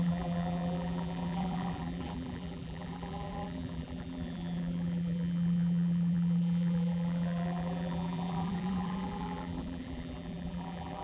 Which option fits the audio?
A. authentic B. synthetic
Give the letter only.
B